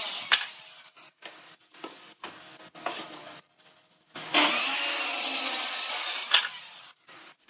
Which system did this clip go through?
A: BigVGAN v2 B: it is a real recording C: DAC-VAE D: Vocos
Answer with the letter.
B